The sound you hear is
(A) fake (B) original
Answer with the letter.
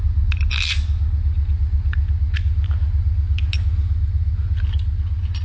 B